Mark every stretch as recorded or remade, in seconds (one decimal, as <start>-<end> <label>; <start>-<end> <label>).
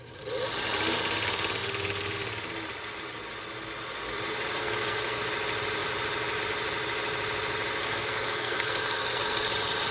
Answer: 0.0-4.6 recorded; 4.6-5.2 remade; 5.2-7.8 recorded; 7.8-9.5 remade; 9.5-9.9 recorded